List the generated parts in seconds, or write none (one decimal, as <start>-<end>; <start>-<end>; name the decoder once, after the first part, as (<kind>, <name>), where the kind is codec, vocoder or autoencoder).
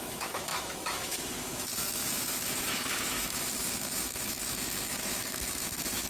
0.0-6.1 (autoencoder, DAC-VAE)